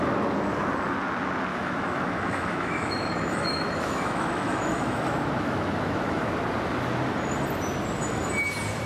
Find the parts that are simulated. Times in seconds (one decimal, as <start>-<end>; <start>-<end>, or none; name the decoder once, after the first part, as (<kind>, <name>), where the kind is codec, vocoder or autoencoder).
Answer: 1.5-6.3 (autoencoder, DAC-VAE)